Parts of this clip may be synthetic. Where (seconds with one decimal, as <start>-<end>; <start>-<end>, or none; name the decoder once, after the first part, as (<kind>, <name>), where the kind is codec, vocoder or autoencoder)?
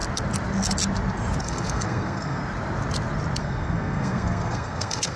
1.4-2.4 (codec, SNAC); 3.4-5.2